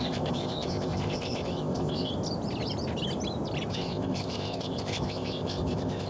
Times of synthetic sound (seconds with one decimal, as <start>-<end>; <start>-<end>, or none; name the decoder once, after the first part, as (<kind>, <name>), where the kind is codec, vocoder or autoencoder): 0.0-2.1 (codec, ZipCodec); 3.7-6.1